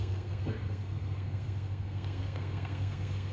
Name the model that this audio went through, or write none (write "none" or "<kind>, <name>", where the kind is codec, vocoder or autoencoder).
codec, SNAC